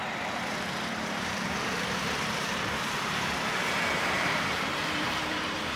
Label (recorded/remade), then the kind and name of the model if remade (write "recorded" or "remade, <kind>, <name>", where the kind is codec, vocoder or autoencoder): remade, vocoder, BigVGAN v2